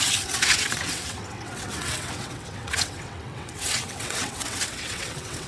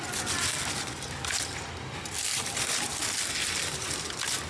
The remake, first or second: first